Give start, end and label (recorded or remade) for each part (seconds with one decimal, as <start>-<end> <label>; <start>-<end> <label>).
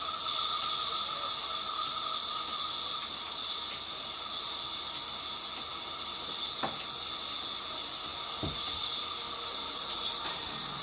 0.0-10.8 recorded